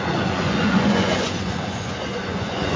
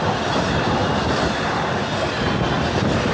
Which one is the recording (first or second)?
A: second